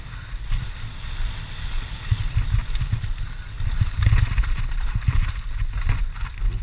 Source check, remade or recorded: recorded